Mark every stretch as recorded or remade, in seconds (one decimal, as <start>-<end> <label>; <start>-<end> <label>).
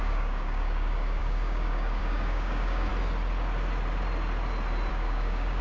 0.0-2.9 remade; 2.9-4.9 recorded; 4.9-5.6 remade